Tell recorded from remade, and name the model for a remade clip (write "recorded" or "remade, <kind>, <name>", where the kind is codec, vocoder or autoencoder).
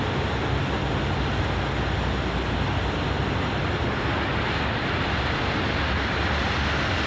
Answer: recorded